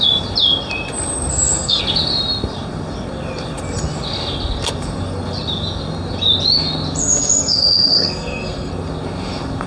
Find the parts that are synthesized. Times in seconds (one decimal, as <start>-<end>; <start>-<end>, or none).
1.3-1.8; 7.0-8.7